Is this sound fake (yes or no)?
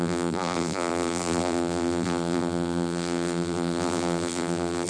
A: yes